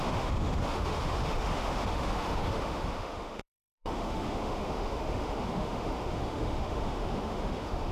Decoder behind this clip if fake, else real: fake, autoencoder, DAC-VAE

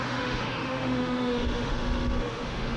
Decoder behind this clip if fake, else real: fake, autoencoder, DAC-VAE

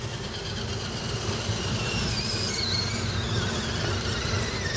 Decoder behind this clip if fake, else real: real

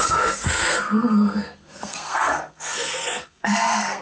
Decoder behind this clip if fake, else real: fake, codec, SNAC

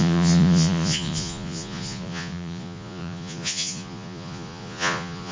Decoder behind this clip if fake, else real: fake, vocoder, Vocos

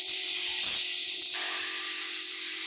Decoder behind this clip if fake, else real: fake, vocoder, BigVGAN v2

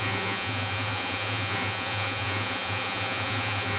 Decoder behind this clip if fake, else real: fake, vocoder, Vocos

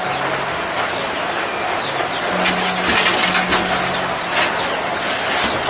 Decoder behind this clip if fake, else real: real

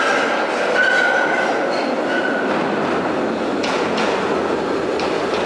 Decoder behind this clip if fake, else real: real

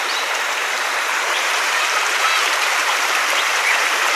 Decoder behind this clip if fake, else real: fake, vocoder, BigVGAN v2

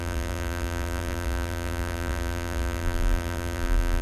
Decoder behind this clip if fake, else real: fake, vocoder, BigVGAN v2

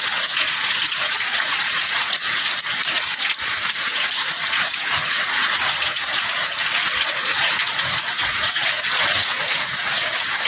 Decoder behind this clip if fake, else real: fake, vocoder, Vocos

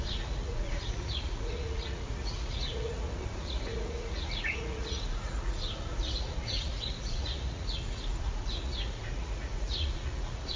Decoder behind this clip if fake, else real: fake, vocoder, Vocos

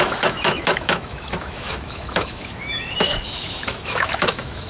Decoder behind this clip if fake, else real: fake, autoencoder, DAC-VAE